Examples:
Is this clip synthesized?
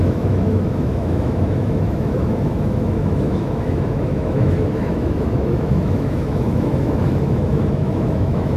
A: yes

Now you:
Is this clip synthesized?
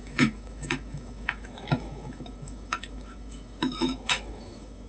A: yes